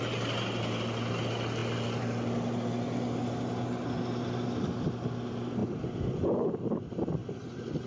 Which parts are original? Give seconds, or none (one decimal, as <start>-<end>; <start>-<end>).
0.0-7.2